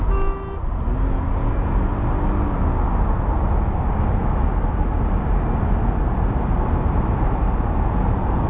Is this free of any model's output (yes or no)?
yes